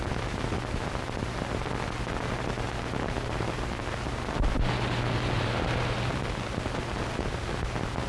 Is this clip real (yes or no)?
yes